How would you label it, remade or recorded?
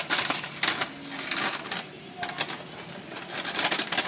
recorded